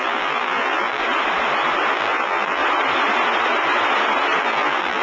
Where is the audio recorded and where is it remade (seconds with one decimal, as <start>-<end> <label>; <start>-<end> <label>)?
0.0-1.0 remade; 1.0-1.9 recorded; 1.9-2.6 remade; 2.6-4.4 recorded; 4.4-5.0 remade